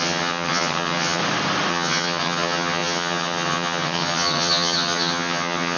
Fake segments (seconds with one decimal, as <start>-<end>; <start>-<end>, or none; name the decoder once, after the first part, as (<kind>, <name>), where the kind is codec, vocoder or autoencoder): 0.0-1.2 (vocoder, HiFi-GAN); 1.7-5.8